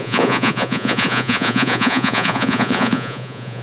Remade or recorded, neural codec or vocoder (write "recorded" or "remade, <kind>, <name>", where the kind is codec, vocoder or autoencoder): remade, vocoder, Vocos